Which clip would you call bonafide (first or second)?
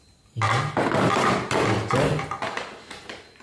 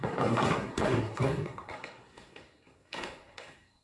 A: first